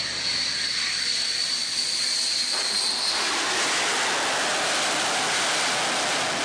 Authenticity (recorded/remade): recorded